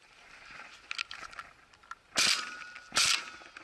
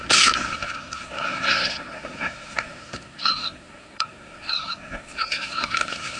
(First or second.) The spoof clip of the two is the second